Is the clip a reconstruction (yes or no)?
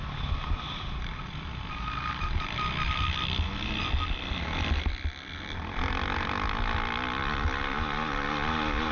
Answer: no